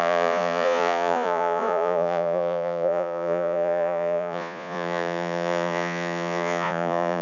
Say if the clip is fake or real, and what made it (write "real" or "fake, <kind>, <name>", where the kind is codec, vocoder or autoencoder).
fake, vocoder, Vocos